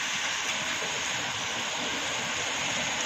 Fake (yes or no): no